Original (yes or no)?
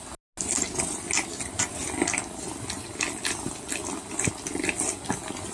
yes